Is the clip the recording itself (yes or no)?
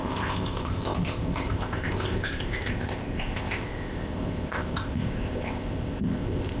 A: no